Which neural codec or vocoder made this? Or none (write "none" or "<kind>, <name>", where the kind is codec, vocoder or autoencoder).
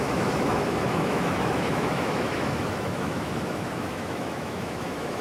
autoencoder, DAC-VAE